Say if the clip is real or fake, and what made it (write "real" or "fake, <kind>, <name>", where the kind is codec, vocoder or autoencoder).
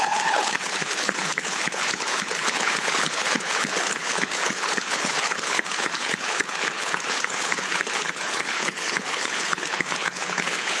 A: fake, codec, HILCodec